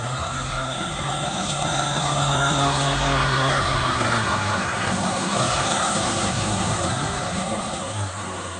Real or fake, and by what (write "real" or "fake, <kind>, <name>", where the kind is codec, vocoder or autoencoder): fake, codec, SNAC